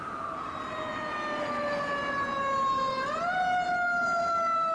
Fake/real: real